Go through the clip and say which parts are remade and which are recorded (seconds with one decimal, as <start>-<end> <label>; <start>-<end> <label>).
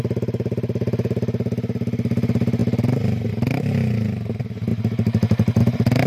0.0-6.1 recorded